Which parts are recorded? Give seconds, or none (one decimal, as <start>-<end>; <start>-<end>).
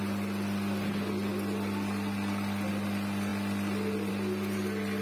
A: 0.0-5.0